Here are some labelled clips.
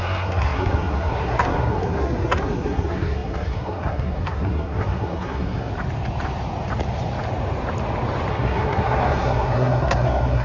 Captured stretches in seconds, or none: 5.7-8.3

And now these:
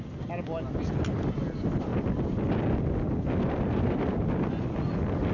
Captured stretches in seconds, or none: 0.0-5.3